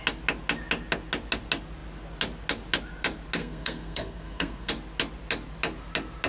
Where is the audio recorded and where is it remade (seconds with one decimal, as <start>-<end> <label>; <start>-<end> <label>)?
0.0-3.4 recorded; 3.4-4.7 remade; 4.7-6.3 recorded